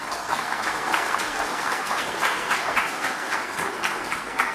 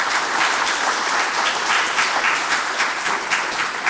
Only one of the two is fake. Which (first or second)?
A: first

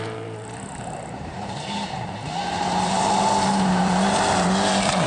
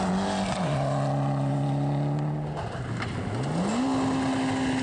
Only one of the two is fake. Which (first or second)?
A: first